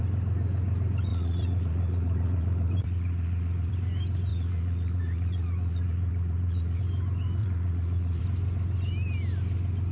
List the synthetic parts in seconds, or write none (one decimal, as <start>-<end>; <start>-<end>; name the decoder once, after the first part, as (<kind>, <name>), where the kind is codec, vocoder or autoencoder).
1.1-3.7 (vocoder, Vocos); 4.3-6.8; 7.4-8.2